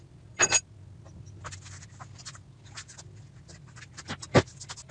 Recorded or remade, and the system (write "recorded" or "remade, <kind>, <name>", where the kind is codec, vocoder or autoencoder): recorded